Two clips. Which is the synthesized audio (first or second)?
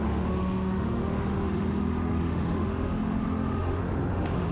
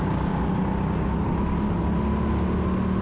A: first